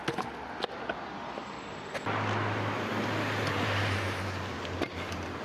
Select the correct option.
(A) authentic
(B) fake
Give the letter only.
A